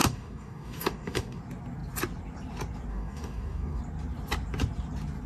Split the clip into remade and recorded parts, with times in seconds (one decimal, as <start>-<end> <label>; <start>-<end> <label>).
0.0-1.4 remade; 1.4-2.9 recorded; 2.9-3.8 remade; 3.8-5.3 recorded